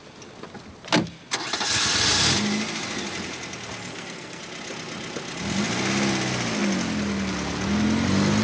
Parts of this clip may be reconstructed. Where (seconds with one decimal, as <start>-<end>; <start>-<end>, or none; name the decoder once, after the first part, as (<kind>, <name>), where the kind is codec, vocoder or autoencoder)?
3.9-4.4 (codec, SNAC)